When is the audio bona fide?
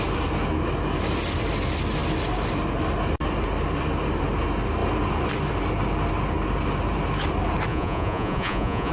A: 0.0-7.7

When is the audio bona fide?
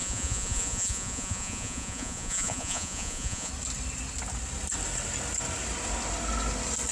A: 3.5-6.9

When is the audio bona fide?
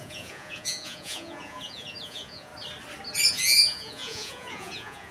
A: 2.5-3.3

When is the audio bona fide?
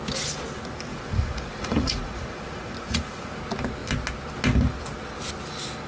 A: 0.0-0.9; 3.4-5.9